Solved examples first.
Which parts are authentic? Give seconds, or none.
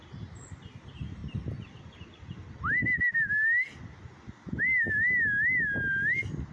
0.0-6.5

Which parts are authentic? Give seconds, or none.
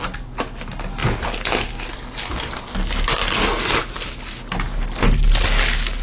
0.0-6.0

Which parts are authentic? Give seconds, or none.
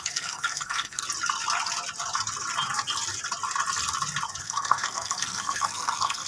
1.0-4.4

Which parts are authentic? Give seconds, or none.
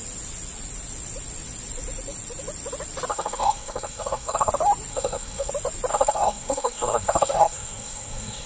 0.0-3.1; 4.5-4.9; 5.5-5.9